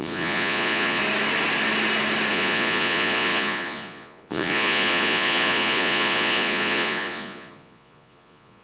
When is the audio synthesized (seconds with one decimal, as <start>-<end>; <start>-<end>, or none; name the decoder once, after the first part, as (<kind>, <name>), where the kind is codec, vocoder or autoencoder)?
0.0-1.0 (vocoder, Vocos); 2.3-8.6